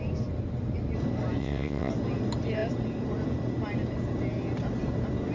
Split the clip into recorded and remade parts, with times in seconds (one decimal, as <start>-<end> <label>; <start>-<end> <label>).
0.0-1.4 recorded; 1.4-1.9 remade; 1.9-5.3 recorded